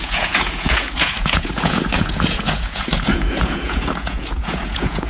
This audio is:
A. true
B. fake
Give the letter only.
B